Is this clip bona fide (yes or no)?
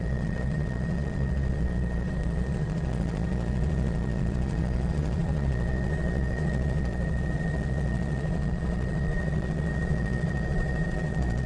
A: no